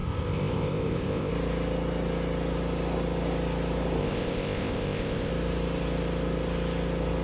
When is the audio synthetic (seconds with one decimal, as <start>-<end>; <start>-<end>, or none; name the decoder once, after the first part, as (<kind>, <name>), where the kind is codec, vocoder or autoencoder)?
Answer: 0.0-1.3 (codec, ZipCodec); 4.0-5.3